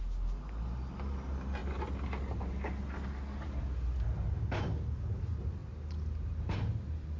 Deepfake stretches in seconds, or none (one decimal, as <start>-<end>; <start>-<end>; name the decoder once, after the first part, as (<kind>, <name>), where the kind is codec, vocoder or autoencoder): none